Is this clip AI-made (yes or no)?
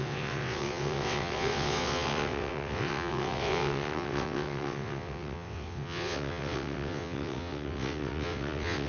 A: yes